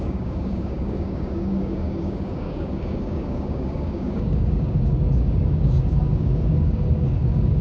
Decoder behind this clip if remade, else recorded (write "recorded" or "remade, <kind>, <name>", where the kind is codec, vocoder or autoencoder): remade, codec, DAC